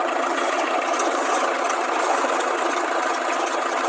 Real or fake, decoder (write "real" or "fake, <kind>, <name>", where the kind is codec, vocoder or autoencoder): fake, vocoder, HiFi-GAN